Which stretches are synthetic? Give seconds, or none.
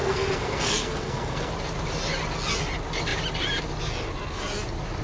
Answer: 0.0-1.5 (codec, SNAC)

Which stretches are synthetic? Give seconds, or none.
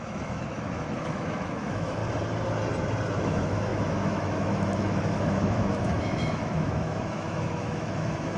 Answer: 0.0-2.0 (autoencoder, DAC-VAE); 3.2-8.4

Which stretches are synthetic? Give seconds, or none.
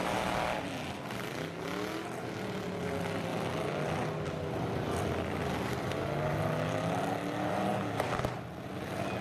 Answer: none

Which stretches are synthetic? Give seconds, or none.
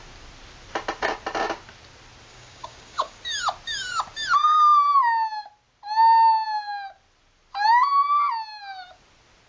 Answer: 2.3-3.2 (codec, DAC)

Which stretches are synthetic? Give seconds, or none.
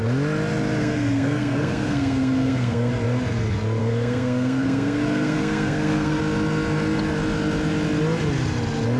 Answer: 0.8-2.9 (codec, SNAC); 3.8-6.2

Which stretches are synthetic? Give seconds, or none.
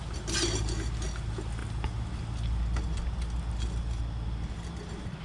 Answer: none